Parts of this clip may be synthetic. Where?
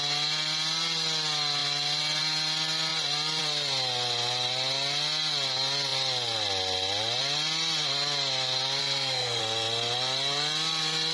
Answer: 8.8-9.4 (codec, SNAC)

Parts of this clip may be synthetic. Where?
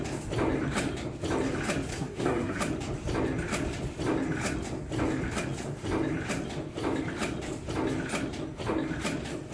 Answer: 1.9-2.6 (codec, SNAC)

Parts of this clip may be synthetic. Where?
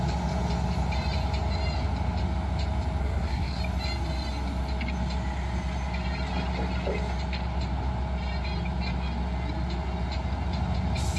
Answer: 3.0-3.6 (codec, SNAC)